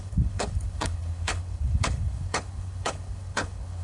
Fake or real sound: fake